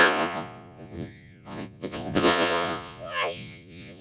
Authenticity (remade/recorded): remade